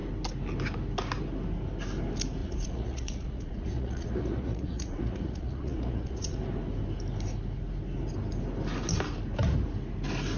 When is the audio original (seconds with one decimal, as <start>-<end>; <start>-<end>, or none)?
0.0-2.4; 6.4-10.4

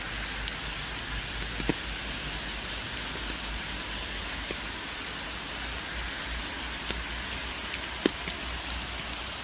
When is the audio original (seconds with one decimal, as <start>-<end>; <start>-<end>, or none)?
0.0-9.4